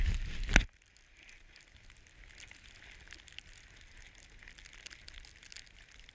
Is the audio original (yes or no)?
yes